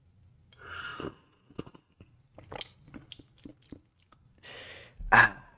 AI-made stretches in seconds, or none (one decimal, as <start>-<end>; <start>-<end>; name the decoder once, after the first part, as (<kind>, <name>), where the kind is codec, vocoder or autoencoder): none